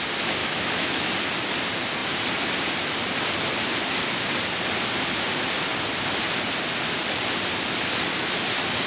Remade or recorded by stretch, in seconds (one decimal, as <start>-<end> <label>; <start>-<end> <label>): 0.0-0.4 recorded; 0.4-1.1 remade; 1.1-8.9 recorded